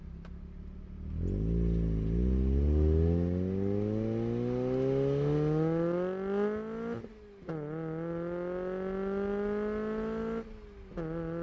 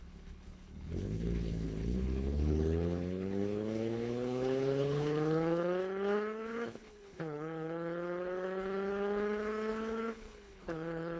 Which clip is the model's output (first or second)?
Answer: second